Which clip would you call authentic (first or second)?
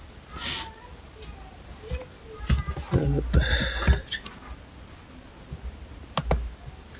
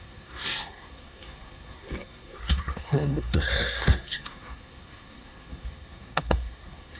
first